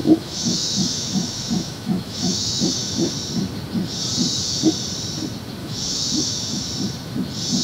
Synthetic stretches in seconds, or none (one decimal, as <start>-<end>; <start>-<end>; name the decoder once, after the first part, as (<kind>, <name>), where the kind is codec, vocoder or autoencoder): 0.0-3.1 (autoencoder, DAC-VAE); 5.6-6.7